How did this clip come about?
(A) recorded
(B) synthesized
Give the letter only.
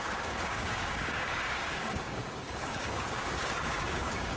B